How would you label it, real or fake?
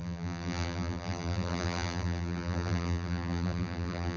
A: fake